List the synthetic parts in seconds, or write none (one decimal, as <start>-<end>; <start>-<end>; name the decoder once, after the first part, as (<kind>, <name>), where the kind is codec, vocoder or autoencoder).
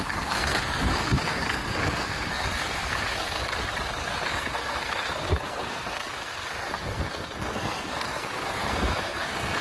0.0-3.5 (codec, SNAC); 4.2-9.6